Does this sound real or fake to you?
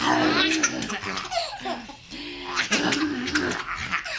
real